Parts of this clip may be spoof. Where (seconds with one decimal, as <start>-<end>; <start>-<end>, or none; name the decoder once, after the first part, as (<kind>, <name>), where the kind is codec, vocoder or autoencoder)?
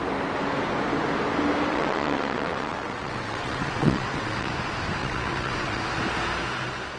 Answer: 1.7-4.5 (vocoder, WaveNeXt); 5.0-5.8